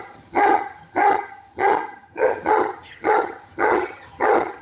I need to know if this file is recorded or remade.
remade